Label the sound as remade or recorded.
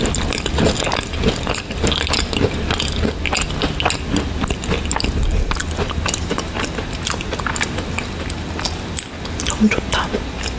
recorded